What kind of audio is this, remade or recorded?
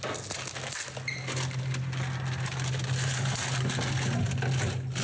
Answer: recorded